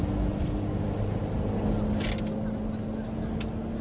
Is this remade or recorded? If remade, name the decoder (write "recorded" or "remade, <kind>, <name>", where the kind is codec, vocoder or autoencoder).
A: recorded